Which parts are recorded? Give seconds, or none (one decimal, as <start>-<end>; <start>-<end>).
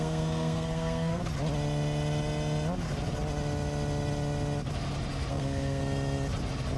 1.2-5.3; 5.8-6.8